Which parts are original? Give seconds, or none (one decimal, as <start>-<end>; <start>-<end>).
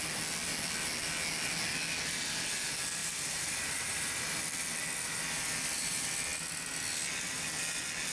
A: 0.0-3.0; 4.4-8.1